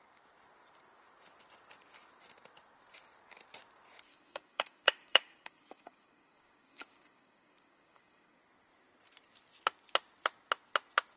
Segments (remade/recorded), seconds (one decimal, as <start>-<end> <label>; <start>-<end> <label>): 0.0-4.1 recorded; 4.1-8.4 remade; 8.4-11.2 recorded